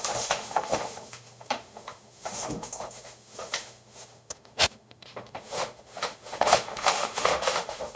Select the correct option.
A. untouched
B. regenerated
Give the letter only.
B